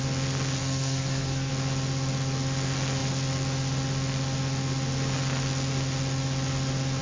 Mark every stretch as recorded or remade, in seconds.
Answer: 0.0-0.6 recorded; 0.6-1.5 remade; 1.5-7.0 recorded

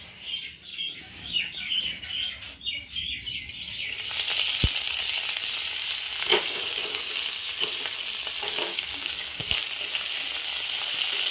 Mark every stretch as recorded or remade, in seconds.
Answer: 0.0-0.7 recorded; 0.7-2.0 remade; 2.0-6.3 recorded; 6.3-7.1 remade; 7.1-8.7 recorded; 8.7-9.6 remade; 9.6-11.3 recorded

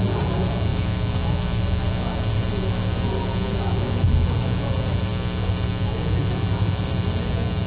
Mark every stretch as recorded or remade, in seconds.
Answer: 0.0-7.7 recorded

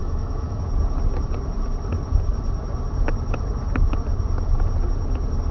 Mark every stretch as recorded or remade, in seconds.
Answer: 0.0-0.6 remade; 0.6-5.5 recorded

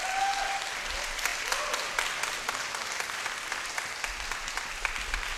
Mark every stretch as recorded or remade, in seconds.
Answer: 0.0-5.4 recorded

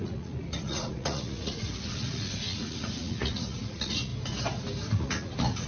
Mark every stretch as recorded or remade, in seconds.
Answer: 0.0-4.1 remade; 4.1-4.9 recorded; 4.9-5.7 remade